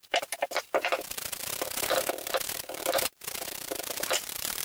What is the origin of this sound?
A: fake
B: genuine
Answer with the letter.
A